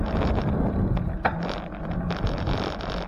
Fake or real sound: real